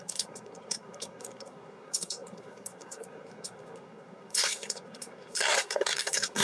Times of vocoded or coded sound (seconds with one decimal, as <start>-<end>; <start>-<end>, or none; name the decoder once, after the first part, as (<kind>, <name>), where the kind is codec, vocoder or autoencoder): 0.0-6.4 (codec, SNAC)